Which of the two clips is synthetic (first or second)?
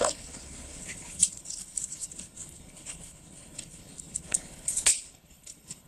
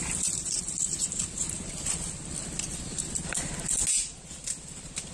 first